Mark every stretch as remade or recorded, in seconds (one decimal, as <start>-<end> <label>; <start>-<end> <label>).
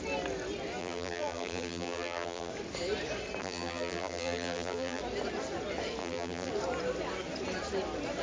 0.0-0.8 recorded; 0.8-2.5 remade; 2.5-3.4 recorded; 3.4-5.0 remade; 5.0-6.0 recorded; 6.0-6.5 remade; 6.5-8.2 recorded